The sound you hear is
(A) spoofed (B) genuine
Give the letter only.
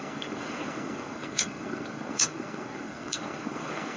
A